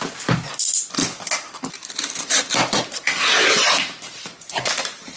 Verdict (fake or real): real